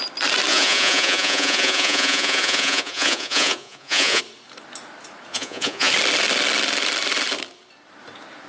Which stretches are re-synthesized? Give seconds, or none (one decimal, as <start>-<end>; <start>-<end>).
0.5-4.2; 5.3-5.9